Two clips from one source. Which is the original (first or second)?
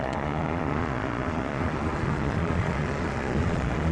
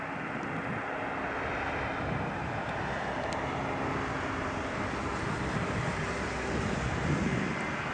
second